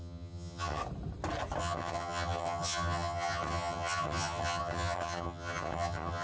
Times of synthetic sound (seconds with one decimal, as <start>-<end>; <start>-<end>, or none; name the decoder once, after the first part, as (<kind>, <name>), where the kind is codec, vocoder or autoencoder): 0.0-0.8 (vocoder, HiFi-GAN); 1.6-6.2